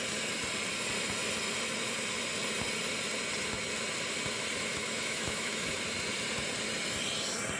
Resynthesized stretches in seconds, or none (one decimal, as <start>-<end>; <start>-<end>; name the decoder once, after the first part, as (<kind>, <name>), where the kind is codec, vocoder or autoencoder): 4.7-5.8 (autoencoder, DAC-VAE)

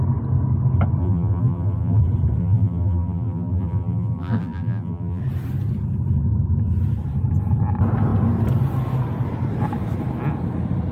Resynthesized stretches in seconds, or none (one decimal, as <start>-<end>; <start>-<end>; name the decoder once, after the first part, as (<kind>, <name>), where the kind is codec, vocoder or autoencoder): 1.0-2.0 (vocoder, BigVGAN v2); 2.4-5.2